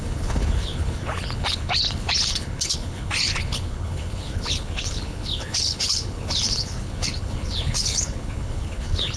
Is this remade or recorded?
remade